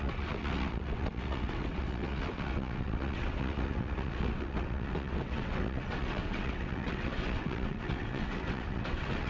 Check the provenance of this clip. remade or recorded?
remade